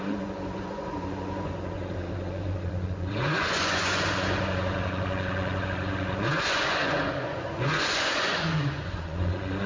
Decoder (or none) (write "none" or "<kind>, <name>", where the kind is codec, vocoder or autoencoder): vocoder, Vocos